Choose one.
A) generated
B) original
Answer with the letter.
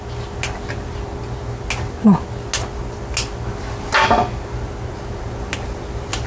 B